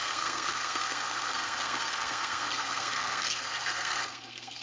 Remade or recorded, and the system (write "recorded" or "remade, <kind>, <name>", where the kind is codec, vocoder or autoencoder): remade, codec, SNAC